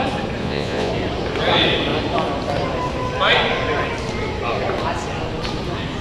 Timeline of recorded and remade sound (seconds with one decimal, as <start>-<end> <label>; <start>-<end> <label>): 0.0-0.4 recorded; 0.4-0.9 remade; 0.9-6.0 recorded

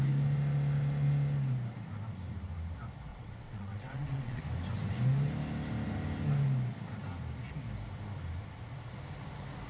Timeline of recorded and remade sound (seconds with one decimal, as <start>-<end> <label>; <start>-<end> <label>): 0.0-3.1 recorded; 3.1-4.4 remade; 4.4-9.7 recorded

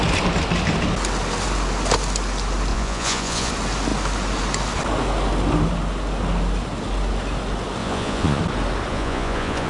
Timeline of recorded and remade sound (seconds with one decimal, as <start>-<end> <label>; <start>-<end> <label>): 0.0-2.7 recorded; 2.7-3.5 remade; 3.5-7.8 recorded; 7.8-8.4 remade; 8.4-8.9 recorded; 8.9-9.7 remade

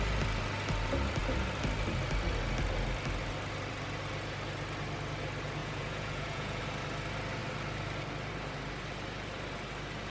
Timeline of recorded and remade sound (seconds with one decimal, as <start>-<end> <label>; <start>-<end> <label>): 0.0-5.6 recorded; 5.6-6.6 remade; 6.6-10.1 recorded